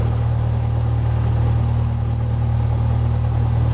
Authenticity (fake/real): real